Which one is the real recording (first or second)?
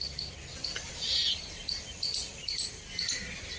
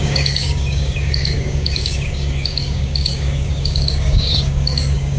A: first